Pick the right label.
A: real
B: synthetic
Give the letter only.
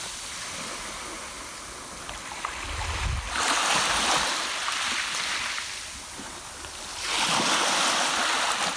A